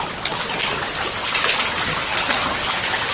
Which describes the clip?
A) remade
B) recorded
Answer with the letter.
B